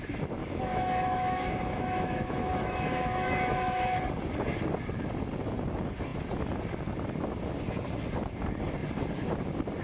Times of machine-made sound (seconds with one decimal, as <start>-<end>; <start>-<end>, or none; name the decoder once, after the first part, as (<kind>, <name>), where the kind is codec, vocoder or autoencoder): 0.4-4.0 (autoencoder, DAC-VAE)